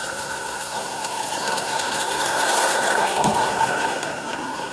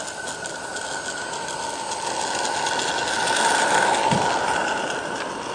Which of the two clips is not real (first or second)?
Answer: first